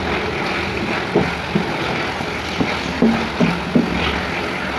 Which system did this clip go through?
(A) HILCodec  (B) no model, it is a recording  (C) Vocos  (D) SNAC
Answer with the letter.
B